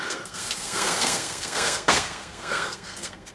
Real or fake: fake